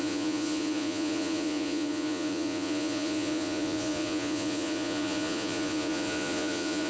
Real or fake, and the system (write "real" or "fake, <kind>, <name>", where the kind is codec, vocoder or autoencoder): fake, vocoder, Vocos